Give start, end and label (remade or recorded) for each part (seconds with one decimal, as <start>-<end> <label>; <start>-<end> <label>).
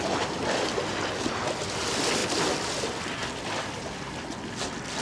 0.0-5.0 recorded